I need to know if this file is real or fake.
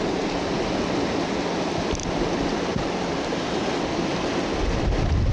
real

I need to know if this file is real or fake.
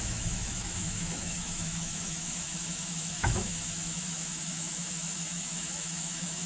fake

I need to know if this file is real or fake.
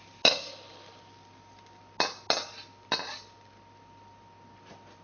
real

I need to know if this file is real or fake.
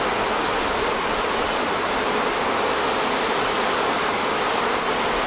real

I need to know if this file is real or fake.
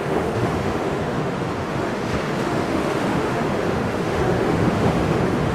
fake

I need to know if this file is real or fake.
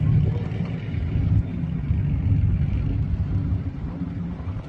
real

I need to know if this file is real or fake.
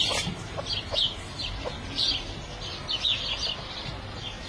real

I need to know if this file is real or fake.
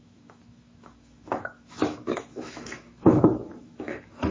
fake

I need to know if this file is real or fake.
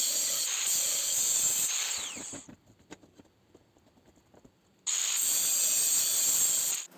real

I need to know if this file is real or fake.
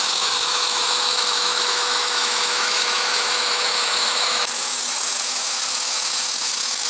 fake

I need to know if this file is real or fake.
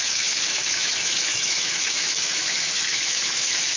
fake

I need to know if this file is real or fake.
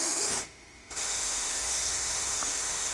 fake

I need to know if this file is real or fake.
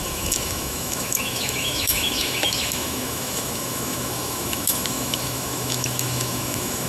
fake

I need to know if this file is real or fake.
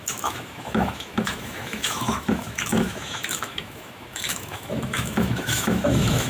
fake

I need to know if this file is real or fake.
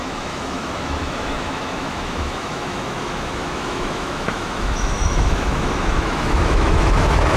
fake